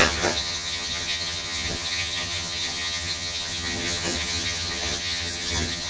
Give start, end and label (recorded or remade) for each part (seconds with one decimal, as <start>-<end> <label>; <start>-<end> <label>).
0.0-5.9 remade